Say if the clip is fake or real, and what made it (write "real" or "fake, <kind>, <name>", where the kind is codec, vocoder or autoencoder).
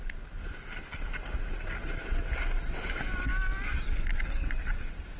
real